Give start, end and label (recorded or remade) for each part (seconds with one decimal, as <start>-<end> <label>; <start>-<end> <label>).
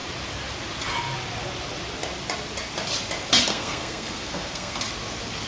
0.0-3.5 recorded; 3.5-4.8 remade; 4.8-5.5 recorded